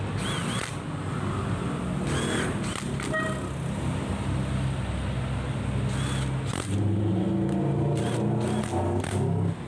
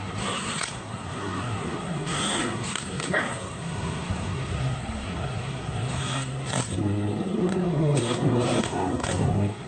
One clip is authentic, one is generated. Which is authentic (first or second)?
first